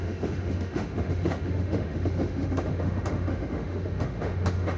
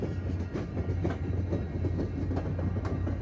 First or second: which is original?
second